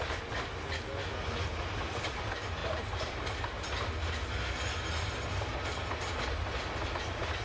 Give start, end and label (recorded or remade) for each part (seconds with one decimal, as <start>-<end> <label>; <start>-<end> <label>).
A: 0.0-7.4 recorded